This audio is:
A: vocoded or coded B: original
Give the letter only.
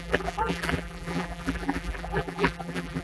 A